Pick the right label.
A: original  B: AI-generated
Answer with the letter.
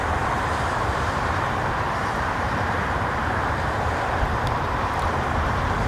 B